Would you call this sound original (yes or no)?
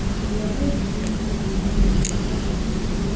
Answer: yes